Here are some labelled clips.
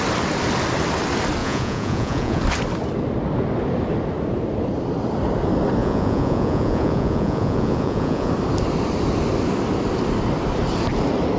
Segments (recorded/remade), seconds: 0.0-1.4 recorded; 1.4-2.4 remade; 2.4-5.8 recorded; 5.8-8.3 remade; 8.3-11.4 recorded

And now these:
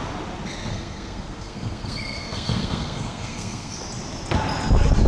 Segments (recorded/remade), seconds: 0.0-0.7 recorded; 0.7-3.8 remade; 3.8-5.1 recorded

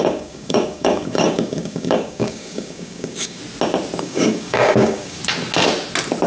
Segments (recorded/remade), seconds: 0.0-3.4 remade; 3.4-4.0 recorded; 4.0-5.2 remade; 5.2-6.3 recorded

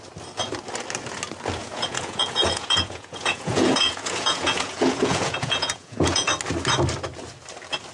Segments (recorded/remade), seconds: 0.0-1.6 recorded; 1.6-6.3 remade; 6.3-7.9 recorded

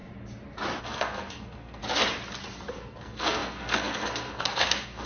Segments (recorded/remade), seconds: 0.0-0.8 recorded; 0.8-1.8 remade; 1.8-2.7 recorded; 2.7-5.1 remade

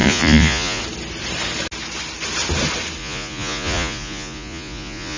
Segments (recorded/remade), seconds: 0.0-0.8 remade; 0.8-3.0 recorded; 3.0-5.2 remade